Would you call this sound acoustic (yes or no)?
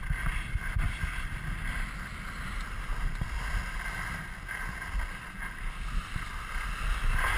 yes